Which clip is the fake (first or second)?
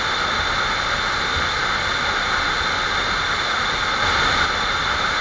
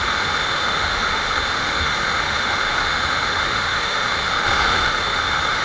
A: second